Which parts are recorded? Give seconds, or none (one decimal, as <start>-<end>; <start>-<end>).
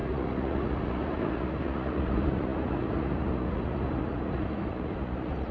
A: none